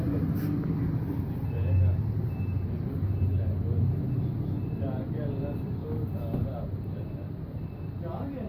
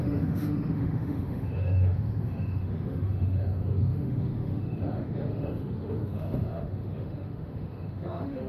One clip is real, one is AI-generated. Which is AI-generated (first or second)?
second